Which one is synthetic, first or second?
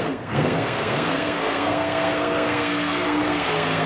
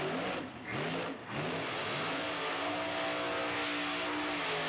first